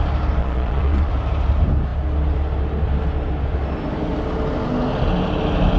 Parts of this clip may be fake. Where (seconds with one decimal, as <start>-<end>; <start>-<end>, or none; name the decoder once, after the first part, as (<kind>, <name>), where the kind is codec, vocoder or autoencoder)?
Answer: 0.4-1.1 (vocoder, Vocos)